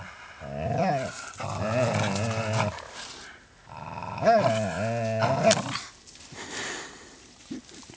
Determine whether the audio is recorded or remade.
recorded